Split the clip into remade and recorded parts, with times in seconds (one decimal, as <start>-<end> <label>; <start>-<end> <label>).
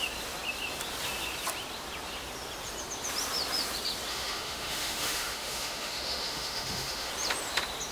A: 0.0-4.1 recorded; 4.1-7.1 remade; 7.1-7.9 recorded